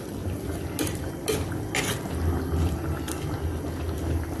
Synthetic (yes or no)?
no